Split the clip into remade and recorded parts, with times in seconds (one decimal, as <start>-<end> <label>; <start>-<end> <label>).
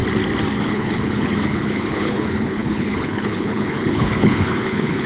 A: 0.0-0.6 recorded; 0.6-5.1 remade